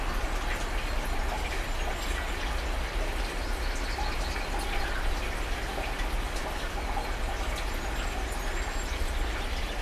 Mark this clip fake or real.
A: real